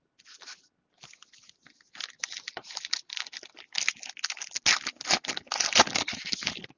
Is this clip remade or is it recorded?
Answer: recorded